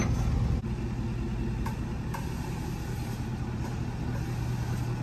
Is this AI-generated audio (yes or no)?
no